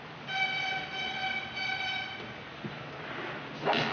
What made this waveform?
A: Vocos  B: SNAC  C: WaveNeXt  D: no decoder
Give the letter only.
D